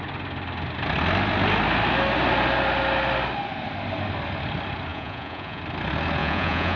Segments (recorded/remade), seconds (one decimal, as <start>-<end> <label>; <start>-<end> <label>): 0.0-4.9 recorded; 4.9-5.6 remade; 5.6-6.2 recorded; 6.2-6.8 remade